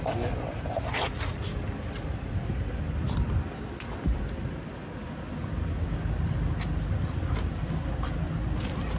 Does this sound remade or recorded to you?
recorded